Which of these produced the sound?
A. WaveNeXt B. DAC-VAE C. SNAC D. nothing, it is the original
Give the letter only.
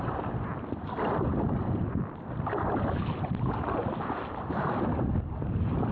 D